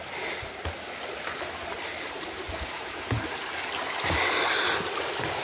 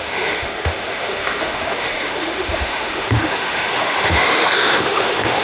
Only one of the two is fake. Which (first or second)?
second